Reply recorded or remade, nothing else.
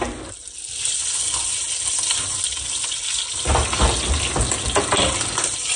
recorded